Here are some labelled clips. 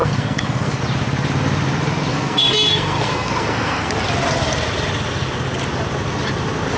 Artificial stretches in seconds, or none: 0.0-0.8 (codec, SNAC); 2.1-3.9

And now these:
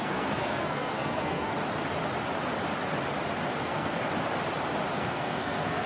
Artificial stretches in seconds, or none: 0.0-1.5 (codec, SNAC); 3.6-4.1; 5.0-5.9

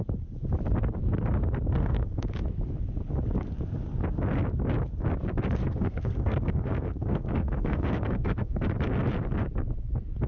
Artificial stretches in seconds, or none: 1.7-2.3 (codec, SNAC); 5.6-8.6

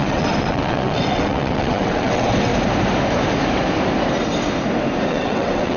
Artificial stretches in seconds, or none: 0.0-2.5 (vocoder, WaveNeXt); 5.1-5.8

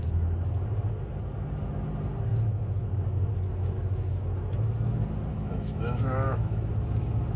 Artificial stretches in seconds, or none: 5.3-6.7 (autoencoder, DAC-VAE)

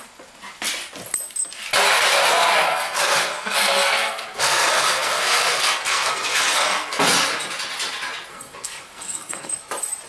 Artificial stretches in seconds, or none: 2.7-7.0 (codec, SNAC); 8.3-9.5